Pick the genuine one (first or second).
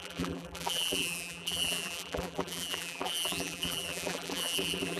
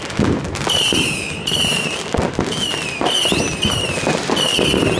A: second